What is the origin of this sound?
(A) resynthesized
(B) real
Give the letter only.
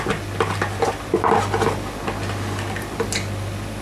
B